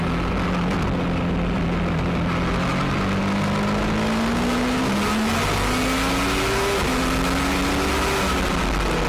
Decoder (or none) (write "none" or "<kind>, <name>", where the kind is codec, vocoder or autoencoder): none